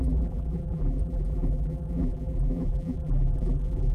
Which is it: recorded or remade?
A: remade